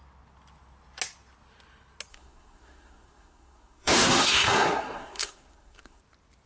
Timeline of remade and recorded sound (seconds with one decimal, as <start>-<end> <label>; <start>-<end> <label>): 0.0-2.1 recorded; 2.1-6.0 remade; 6.0-6.5 recorded